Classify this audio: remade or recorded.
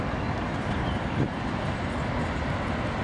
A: recorded